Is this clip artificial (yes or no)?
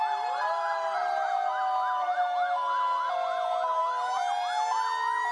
no